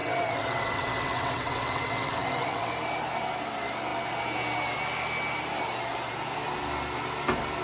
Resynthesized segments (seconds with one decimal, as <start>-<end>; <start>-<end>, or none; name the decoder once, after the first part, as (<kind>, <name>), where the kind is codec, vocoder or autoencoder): 0.0-2.7 (vocoder, WaveNeXt)